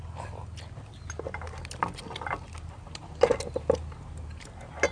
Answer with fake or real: real